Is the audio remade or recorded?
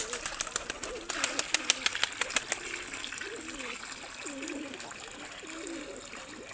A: recorded